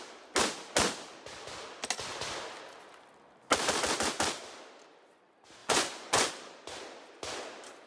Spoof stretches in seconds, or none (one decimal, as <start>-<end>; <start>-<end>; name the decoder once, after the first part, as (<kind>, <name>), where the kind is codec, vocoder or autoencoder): 5.6-6.3 (vocoder, Vocos)